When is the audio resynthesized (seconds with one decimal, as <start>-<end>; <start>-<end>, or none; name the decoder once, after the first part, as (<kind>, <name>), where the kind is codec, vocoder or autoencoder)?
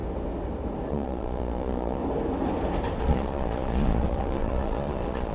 0.9-2.0 (vocoder, Vocos); 3.0-5.3